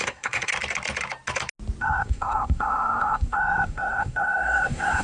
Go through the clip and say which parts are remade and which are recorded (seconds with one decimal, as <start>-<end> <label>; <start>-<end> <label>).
0.0-0.5 remade; 0.5-1.8 recorded; 1.8-5.0 remade